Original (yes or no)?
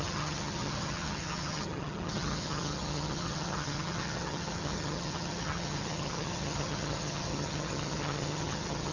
no